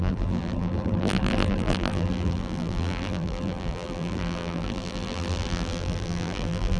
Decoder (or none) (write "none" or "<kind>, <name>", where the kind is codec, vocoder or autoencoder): vocoder, BigVGAN v2